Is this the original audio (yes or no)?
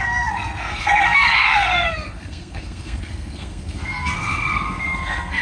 no